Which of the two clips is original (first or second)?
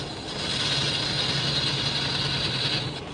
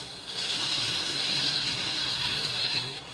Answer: first